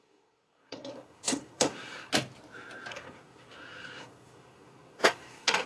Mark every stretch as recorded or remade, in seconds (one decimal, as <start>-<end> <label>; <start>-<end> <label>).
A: 0.0-2.1 remade; 2.1-2.9 recorded; 2.9-5.7 remade